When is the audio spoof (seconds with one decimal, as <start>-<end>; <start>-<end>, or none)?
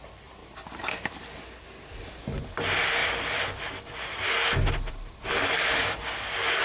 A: 0.0-6.6